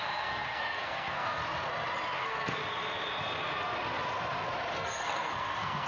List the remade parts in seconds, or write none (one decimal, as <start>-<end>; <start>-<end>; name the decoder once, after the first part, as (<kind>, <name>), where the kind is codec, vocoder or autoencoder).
0.0-1.4 (codec, SNAC); 2.2-2.6; 4.7-5.9